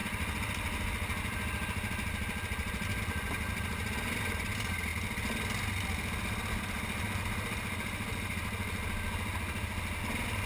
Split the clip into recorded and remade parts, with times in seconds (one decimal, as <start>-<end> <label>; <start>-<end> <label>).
0.0-10.5 recorded